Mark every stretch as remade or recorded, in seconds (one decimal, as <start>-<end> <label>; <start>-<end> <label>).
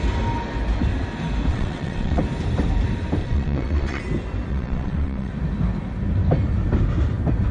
0.0-1.5 recorded; 1.5-2.2 remade; 2.2-3.2 recorded; 3.2-4.0 remade; 4.0-4.5 recorded; 4.5-5.3 remade; 5.3-7.5 recorded